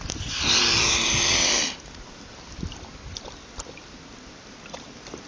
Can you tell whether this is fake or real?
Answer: real